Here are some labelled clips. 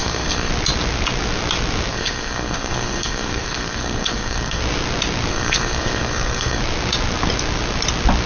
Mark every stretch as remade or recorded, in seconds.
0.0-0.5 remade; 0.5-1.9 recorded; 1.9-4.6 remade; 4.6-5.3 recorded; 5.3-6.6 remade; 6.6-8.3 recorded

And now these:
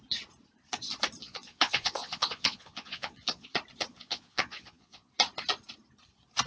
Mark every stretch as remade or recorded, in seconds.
0.0-1.2 recorded; 1.2-3.5 remade; 3.5-3.9 recorded; 3.9-5.1 remade; 5.1-6.5 recorded

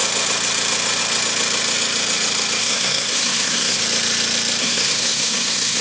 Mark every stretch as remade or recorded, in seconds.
0.0-2.6 recorded; 2.6-3.8 remade; 3.8-4.6 recorded; 4.6-5.8 remade

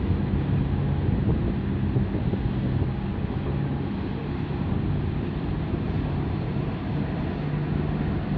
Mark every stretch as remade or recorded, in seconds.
0.0-4.2 recorded; 4.2-7.2 remade; 7.2-8.4 recorded

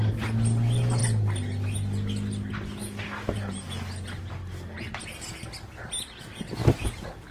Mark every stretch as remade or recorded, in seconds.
0.0-6.6 recorded; 6.6-7.3 remade

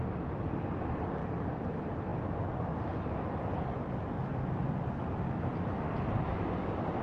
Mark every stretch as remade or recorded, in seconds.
0.0-1.2 recorded; 1.2-1.7 remade; 1.7-7.0 recorded